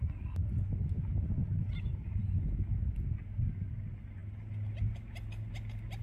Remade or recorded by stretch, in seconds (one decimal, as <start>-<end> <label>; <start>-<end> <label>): 0.0-6.0 recorded